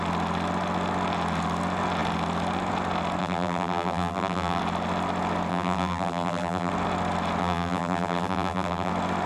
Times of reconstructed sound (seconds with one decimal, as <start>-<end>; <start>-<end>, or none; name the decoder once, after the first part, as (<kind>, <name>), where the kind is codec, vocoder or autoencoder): 3.2-4.6 (vocoder, BigVGAN v2); 5.5-6.7; 7.4-8.9